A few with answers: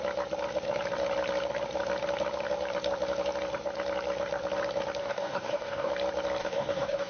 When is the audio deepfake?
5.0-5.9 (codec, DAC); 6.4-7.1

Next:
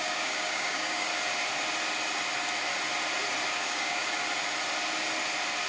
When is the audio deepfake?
0.0-1.1 (codec, DAC); 3.5-4.0

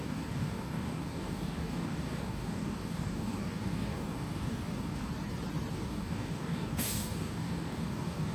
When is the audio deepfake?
0.0-5.1 (codec, DAC); 5.7-8.3

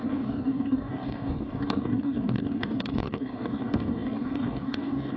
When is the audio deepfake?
0.0-5.2 (codec, DAC)

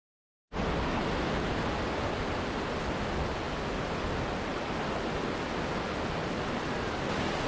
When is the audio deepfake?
none